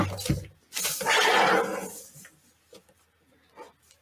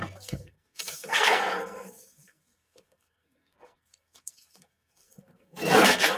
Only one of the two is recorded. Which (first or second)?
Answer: first